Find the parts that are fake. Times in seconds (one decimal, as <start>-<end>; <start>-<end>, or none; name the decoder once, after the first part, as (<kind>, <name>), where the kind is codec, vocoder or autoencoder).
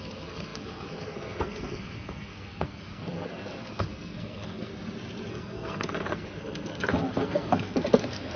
0.0-4.7 (codec, SNAC); 5.3-8.4